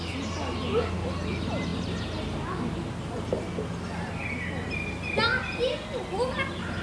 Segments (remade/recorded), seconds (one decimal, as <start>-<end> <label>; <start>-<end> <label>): 0.0-6.8 recorded